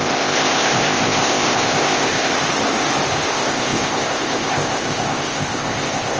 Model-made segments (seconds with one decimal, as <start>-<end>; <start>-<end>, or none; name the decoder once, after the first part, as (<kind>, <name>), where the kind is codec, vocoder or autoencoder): 0.0-2.3 (codec, ZipCodec); 3.3-6.2